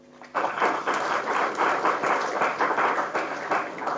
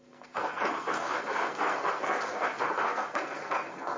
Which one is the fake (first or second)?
second